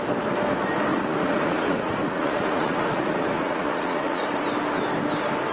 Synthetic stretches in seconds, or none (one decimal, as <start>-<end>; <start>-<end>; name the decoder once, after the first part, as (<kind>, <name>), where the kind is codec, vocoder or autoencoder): 0.9-4.2 (vocoder, Vocos)